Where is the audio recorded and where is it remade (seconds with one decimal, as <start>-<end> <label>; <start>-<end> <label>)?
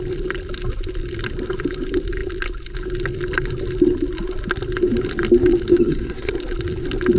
0.0-5.7 recorded; 5.7-6.3 remade; 6.3-7.2 recorded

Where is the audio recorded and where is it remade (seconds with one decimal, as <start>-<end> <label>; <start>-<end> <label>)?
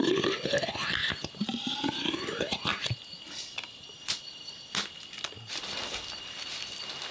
0.0-1.0 recorded; 1.0-1.8 remade; 1.8-7.1 recorded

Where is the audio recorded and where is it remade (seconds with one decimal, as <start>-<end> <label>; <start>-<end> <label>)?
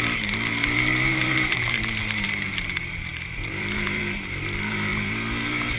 0.0-5.8 remade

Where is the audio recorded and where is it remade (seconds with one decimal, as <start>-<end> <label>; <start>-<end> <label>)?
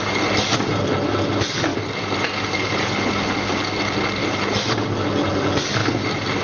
0.0-6.4 recorded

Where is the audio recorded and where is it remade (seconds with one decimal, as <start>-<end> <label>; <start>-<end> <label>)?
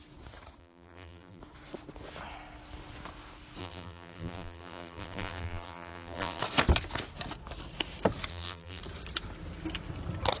0.0-0.6 recorded; 0.6-1.4 remade; 1.4-3.6 recorded; 3.6-6.4 remade; 6.4-8.3 recorded; 8.3-8.8 remade; 8.8-10.4 recorded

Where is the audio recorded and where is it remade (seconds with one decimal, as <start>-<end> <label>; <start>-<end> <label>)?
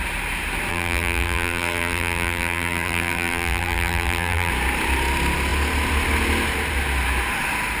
0.0-0.7 recorded; 0.7-4.5 remade; 4.5-7.8 recorded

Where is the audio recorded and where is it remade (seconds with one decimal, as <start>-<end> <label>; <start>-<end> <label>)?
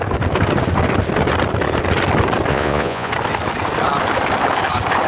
0.0-2.5 recorded; 2.5-3.1 remade; 3.1-5.1 recorded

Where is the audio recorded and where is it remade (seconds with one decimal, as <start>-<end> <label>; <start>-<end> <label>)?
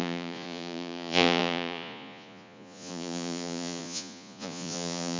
0.0-5.2 remade